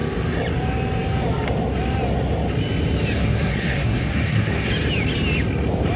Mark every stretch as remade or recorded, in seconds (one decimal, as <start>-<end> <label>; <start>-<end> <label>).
0.0-3.2 recorded; 3.2-4.7 remade; 4.7-6.0 recorded